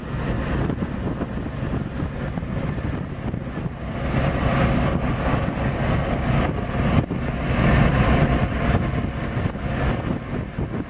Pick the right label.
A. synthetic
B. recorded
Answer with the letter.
B